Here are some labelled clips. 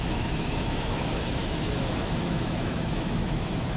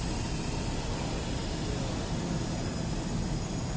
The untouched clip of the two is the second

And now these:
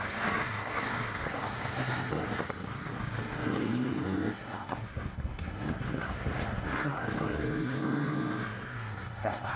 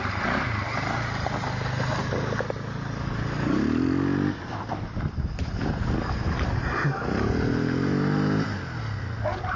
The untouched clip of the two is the second